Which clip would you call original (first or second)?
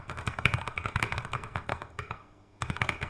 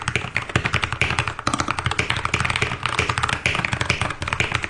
second